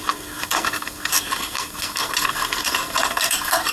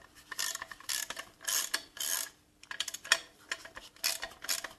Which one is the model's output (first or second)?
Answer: first